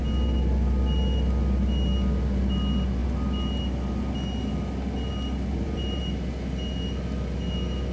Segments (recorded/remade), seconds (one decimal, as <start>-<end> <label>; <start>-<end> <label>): 0.0-5.5 recorded; 5.5-6.0 remade; 6.0-7.9 recorded